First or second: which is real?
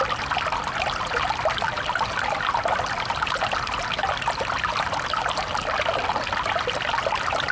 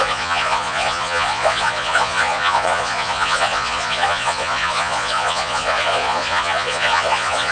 first